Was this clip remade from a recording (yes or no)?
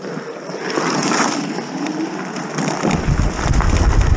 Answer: no